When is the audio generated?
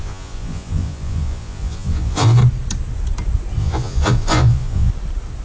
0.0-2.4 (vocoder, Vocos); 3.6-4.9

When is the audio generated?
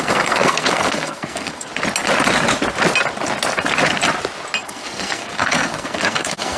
0.0-1.7 (codec, SNAC); 4.6-6.6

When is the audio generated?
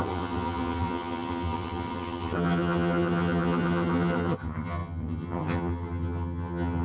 0.0-6.8 (vocoder, HiFi-GAN)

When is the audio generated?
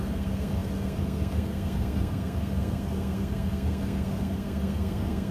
0.0-5.3 (codec, SNAC)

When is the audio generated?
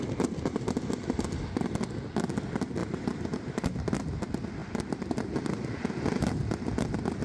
2.8-3.7 (vocoder, BigVGAN v2)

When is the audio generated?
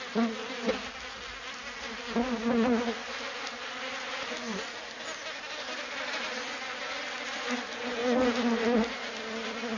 none